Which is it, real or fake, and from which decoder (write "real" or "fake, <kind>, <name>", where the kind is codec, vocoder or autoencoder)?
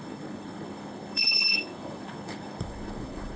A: fake, codec, HILCodec